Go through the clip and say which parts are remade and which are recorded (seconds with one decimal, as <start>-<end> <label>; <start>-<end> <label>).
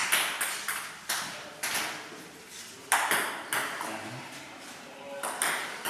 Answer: 0.0-5.9 recorded